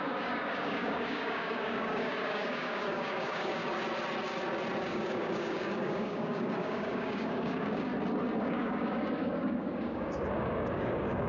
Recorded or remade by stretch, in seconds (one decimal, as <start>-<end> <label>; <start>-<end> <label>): 0.0-3.6 remade; 3.6-4.8 recorded; 4.8-7.9 remade; 7.9-8.4 recorded; 8.4-11.3 remade